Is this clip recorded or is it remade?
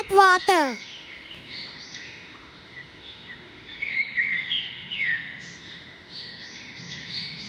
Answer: remade